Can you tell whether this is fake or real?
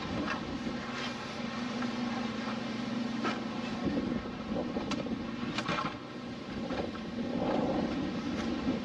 fake